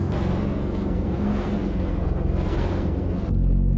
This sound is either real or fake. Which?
fake